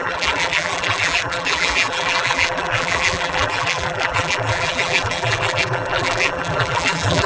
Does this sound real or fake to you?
fake